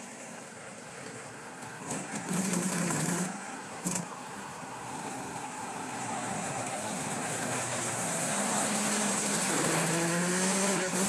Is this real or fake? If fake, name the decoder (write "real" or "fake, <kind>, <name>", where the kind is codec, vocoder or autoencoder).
fake, codec, SNAC